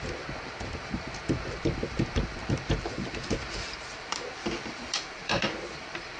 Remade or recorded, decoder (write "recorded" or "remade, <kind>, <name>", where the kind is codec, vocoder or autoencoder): remade, vocoder, BigVGAN v2